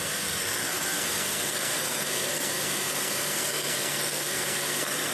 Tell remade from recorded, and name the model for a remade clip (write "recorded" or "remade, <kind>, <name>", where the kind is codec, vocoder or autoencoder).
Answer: remade, codec, SNAC